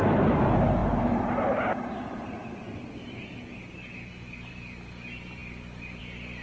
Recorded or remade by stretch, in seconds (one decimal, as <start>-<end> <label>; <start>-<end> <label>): 0.0-6.4 recorded

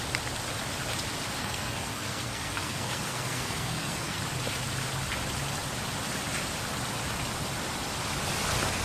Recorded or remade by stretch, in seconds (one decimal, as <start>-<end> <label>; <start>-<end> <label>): 0.0-1.4 recorded; 1.4-4.2 remade; 4.2-8.8 recorded

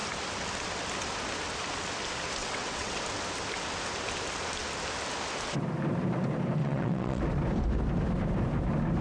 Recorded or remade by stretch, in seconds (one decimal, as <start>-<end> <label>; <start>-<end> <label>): 0.0-2.4 recorded; 2.4-3.0 remade; 3.0-6.6 recorded; 6.6-7.2 remade; 7.2-9.0 recorded